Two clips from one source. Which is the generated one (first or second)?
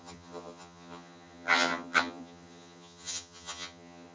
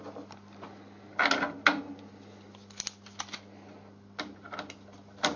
first